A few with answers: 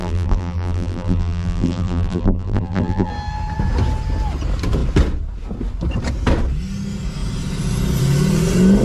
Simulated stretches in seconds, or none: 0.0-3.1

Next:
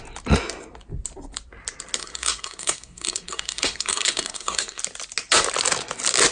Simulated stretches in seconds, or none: 2.0-4.8

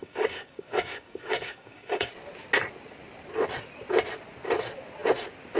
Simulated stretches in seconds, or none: 0.0-2.1

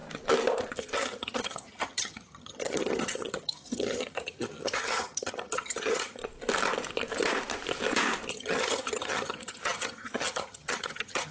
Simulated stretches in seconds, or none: 0.8-6.2; 8.3-11.3

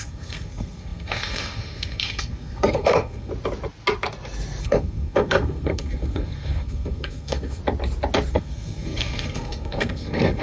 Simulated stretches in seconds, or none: 0.0-3.3; 4.6-7.6; 8.3-10.4

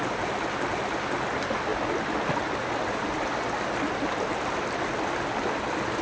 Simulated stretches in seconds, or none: none